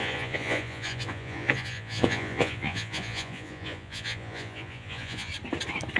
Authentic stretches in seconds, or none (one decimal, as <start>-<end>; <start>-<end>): 5.3-6.0